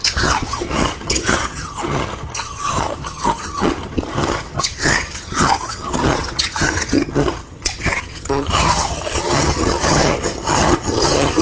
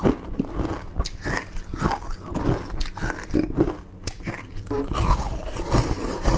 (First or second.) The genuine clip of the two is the second